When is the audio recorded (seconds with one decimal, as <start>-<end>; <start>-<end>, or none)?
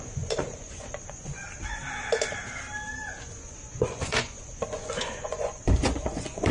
1.4-3.2